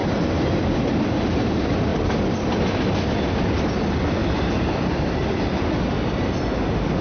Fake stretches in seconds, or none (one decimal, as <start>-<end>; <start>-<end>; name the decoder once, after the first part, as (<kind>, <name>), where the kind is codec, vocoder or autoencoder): 0.0-0.8 (vocoder, BigVGAN v2); 1.9-3.8; 4.2-5.6